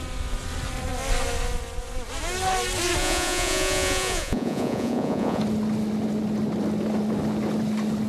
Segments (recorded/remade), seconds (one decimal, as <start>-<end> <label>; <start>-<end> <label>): 0.0-3.0 recorded; 3.0-5.4 remade; 5.4-8.1 recorded